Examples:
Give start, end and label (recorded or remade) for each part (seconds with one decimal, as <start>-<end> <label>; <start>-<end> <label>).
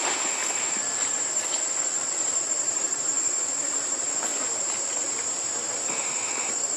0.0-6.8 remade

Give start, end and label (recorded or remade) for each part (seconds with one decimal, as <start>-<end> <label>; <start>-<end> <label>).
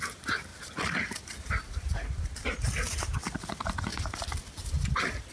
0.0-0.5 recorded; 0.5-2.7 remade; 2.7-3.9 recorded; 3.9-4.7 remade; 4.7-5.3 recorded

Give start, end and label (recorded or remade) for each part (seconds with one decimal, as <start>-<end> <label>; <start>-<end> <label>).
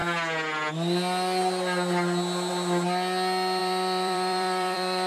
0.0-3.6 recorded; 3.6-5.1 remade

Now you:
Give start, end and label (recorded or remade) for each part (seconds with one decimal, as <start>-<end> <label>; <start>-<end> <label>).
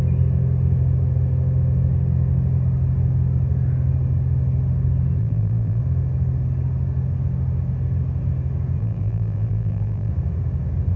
0.0-5.2 recorded; 5.2-5.8 remade; 5.8-8.8 recorded; 8.8-10.1 remade; 10.1-11.0 recorded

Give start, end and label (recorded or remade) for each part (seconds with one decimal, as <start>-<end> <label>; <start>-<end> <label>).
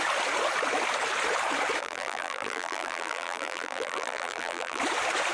0.0-1.8 recorded; 1.8-4.8 remade; 4.8-5.3 recorded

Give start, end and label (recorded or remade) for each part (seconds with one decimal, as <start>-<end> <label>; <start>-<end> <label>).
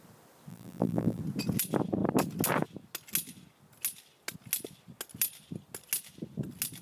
0.0-0.5 recorded; 0.5-1.2 remade; 1.2-6.8 recorded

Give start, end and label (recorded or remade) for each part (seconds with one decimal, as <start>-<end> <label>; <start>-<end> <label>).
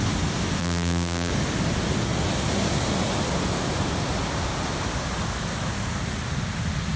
0.0-0.6 recorded; 0.6-1.3 remade; 1.3-7.0 recorded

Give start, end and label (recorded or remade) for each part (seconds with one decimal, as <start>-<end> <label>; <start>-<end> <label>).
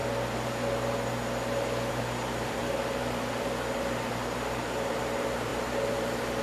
0.0-1.9 recorded; 1.9-6.4 remade